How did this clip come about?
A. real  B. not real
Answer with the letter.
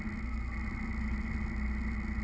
A